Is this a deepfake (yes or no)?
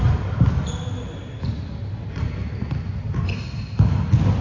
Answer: no